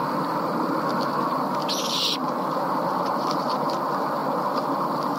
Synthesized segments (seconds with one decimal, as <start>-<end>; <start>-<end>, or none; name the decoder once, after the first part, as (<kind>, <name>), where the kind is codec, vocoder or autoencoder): 2.2-3.4 (vocoder, BigVGAN v2)